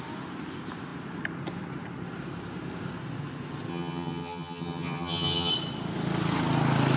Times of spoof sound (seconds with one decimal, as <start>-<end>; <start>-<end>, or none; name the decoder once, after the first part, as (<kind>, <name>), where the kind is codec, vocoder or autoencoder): 3.7-5.5 (vocoder, HiFi-GAN)